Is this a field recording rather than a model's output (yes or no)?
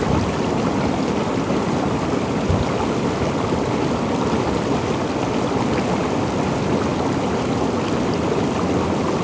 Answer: yes